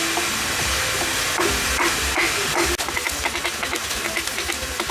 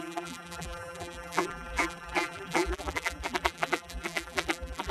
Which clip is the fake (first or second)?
second